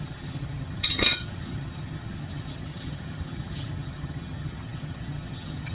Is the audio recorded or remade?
remade